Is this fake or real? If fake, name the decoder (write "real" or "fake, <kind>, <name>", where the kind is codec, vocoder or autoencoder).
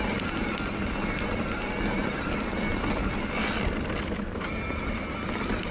real